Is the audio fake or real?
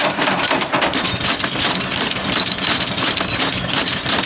real